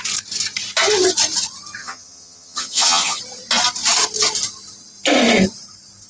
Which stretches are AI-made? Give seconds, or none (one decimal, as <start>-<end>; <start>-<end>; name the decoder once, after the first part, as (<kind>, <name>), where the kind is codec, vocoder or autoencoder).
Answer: 1.8-3.2 (vocoder, HiFi-GAN)